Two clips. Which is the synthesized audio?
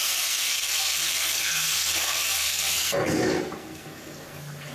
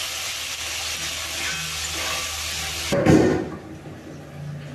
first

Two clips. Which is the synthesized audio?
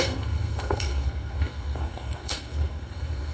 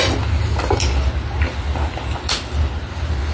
first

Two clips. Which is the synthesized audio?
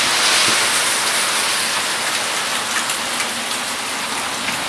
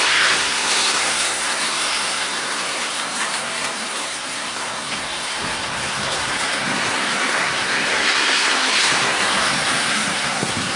second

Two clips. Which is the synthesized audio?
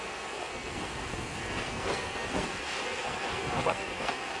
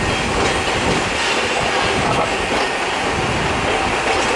first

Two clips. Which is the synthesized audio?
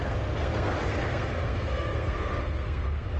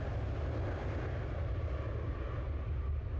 first